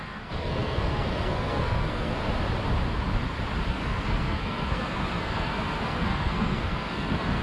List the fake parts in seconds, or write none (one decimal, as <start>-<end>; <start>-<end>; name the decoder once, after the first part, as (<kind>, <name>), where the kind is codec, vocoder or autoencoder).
0.0-2.2 (codec, SNAC); 3.7-7.4